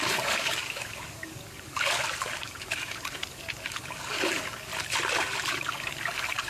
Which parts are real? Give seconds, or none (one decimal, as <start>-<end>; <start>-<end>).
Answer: 4.7-5.5

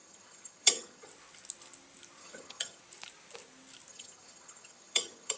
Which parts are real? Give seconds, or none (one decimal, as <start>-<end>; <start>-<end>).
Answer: 1.1-2.2; 2.8-3.9

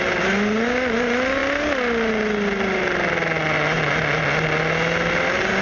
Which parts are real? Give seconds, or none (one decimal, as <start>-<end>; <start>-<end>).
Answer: 0.0-5.6

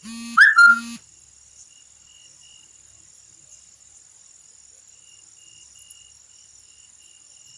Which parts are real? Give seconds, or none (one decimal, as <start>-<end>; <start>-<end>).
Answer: 0.0-7.6